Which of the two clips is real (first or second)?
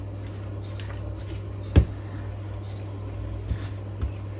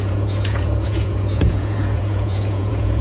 first